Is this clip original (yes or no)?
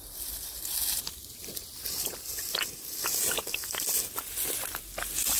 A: yes